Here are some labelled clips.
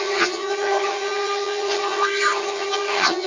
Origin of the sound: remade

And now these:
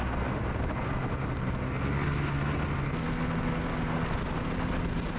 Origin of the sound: recorded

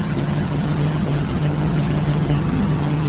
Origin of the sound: remade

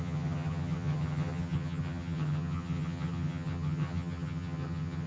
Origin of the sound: remade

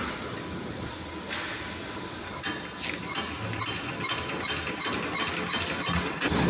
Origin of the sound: recorded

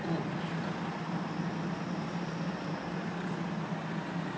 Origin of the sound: recorded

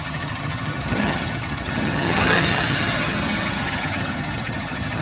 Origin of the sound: remade